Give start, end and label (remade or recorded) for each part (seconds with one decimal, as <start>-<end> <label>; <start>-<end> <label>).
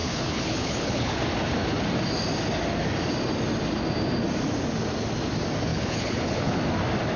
0.0-1.2 remade; 1.2-5.7 recorded; 5.7-6.6 remade; 6.6-7.2 recorded